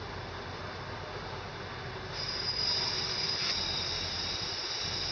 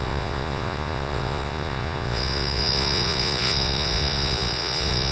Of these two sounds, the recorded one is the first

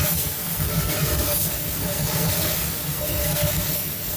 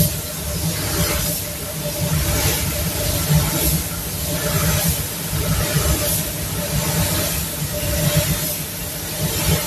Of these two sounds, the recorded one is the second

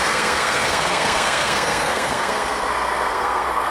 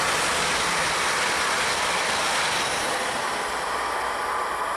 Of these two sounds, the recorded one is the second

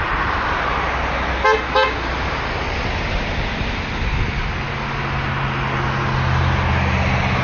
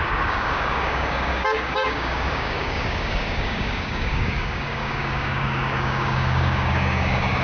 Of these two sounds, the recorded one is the first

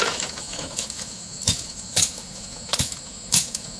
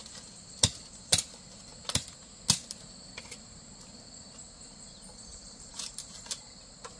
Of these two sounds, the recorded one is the second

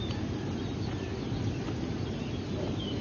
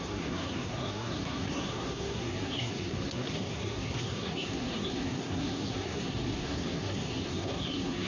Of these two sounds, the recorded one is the first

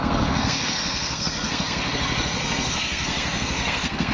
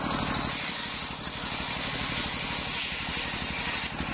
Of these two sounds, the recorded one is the second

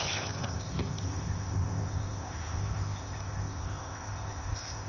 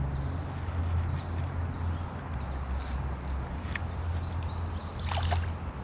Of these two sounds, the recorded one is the second